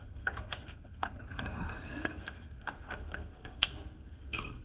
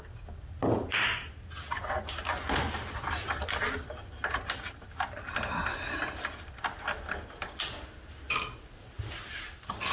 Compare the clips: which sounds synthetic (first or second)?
first